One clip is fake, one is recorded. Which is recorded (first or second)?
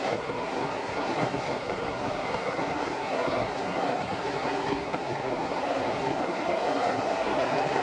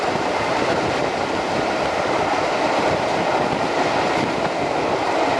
second